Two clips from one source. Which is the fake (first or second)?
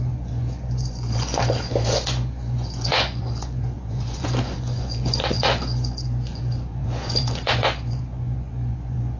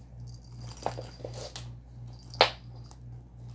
first